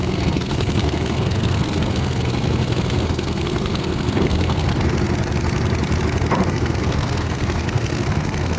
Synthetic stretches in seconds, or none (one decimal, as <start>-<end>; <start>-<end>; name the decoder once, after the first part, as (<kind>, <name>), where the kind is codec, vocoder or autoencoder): 0.0-4.7 (codec, SNAC); 6.5-8.6